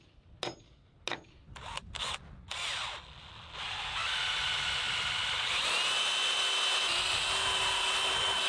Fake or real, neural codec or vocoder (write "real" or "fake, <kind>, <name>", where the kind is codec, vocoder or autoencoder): real